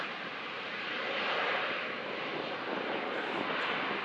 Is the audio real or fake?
real